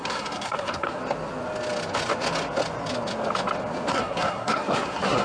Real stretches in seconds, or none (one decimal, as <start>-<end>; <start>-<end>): 1.0-3.9